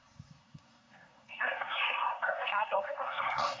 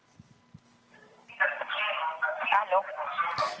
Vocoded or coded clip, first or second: first